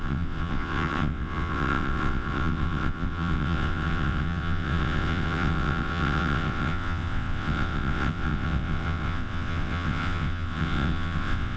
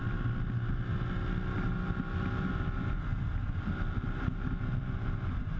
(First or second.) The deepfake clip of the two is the first